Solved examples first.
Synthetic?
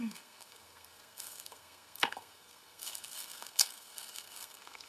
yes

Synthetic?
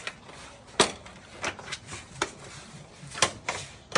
no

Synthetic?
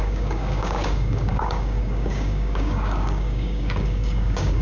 yes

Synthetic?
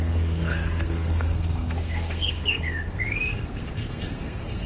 yes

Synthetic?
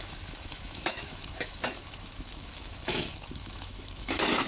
yes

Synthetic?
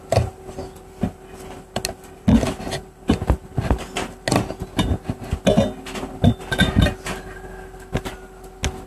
no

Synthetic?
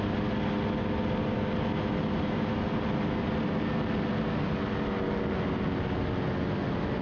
no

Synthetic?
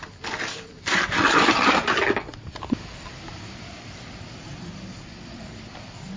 no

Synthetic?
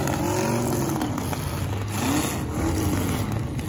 no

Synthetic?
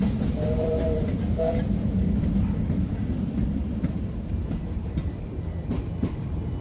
yes